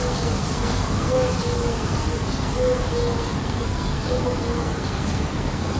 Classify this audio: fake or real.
fake